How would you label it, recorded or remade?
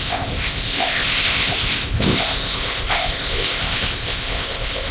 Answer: remade